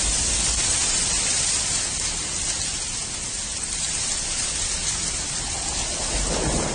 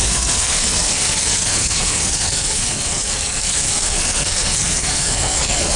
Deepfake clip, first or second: second